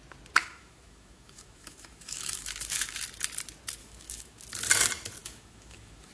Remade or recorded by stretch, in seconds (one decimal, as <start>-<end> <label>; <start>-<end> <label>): 0.0-0.4 recorded; 0.4-3.0 remade; 3.0-3.8 recorded; 3.8-4.4 remade; 4.4-5.2 recorded; 5.2-6.1 remade